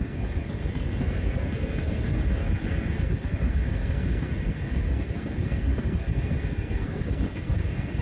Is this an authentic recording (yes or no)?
no